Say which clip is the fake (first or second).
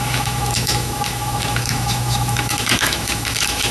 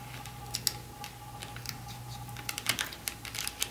first